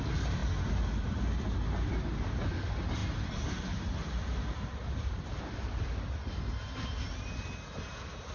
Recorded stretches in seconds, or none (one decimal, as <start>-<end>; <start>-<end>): 0.0-8.3